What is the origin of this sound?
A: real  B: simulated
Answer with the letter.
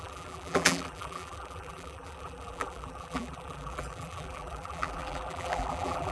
B